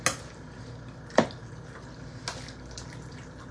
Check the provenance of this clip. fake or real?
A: real